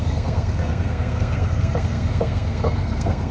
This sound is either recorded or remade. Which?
remade